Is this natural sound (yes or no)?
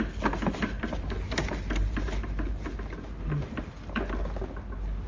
yes